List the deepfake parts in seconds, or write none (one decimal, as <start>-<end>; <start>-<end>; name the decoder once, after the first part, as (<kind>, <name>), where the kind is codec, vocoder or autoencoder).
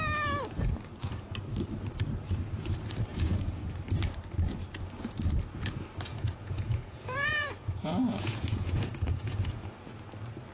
3.1-3.7 (vocoder, Vocos); 6.1-9.7